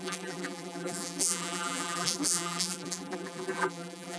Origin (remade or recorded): remade